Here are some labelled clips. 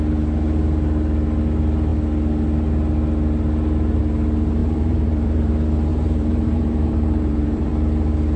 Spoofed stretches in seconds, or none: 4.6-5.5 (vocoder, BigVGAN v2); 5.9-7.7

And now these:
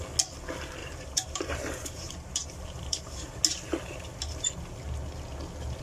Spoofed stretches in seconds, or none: 0.8-3.4 (vocoder, BigVGAN v2)

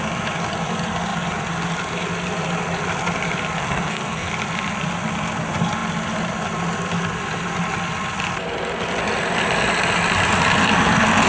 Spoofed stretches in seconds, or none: 3.6-4.3 (codec, SNAC)

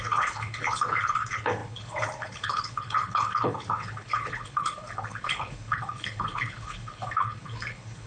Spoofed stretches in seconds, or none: 0.0-8.1 (codec, HILCodec)

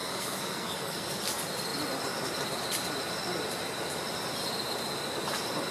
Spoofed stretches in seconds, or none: 0.0-1.2 (codec, SNAC)

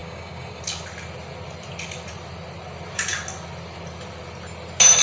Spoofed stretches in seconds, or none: 0.0-0.6 (codec, DAC)

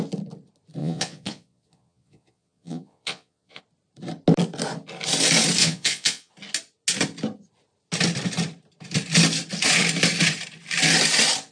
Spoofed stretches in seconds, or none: 0.8-3.6 (vocoder, Vocos); 5.6-6.3